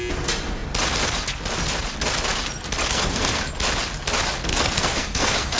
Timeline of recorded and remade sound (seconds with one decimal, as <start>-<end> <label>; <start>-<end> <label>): 0.0-2.8 recorded; 2.8-3.4 remade; 3.4-4.5 recorded; 4.5-5.6 remade